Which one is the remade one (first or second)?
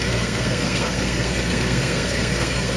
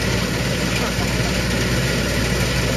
first